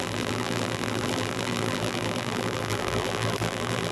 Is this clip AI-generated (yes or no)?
yes